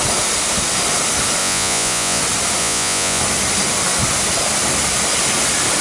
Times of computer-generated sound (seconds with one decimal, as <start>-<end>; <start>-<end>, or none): 1.4-2.2; 2.6-3.2